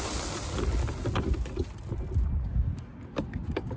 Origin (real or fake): real